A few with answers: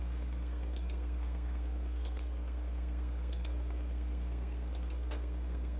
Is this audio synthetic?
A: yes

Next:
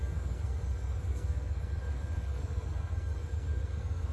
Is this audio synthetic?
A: yes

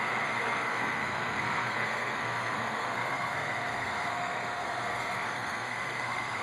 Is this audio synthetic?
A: yes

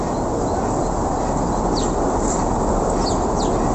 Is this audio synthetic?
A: no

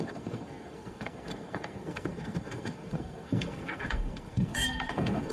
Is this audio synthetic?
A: yes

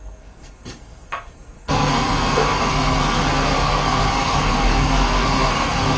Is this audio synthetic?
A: yes